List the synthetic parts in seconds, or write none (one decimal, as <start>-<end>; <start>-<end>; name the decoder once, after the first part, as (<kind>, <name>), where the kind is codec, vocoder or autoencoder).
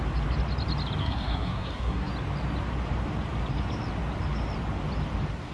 1.0-2.1 (codec, SNAC)